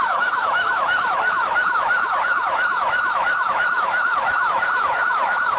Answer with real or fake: fake